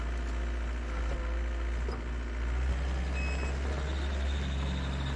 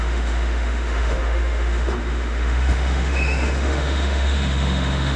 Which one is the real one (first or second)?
first